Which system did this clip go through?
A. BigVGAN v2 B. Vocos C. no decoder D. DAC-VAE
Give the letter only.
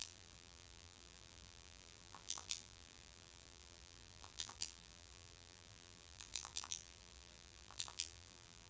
A